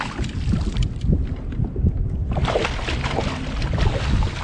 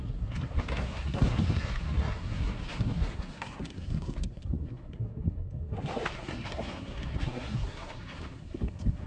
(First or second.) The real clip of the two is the first